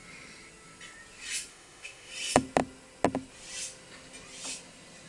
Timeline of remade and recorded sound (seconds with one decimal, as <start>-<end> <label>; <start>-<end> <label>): 0.0-1.5 recorded; 1.5-2.1 remade; 2.1-5.1 recorded